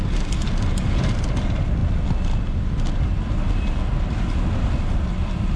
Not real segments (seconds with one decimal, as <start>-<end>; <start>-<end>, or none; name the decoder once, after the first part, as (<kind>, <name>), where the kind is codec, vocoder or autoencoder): none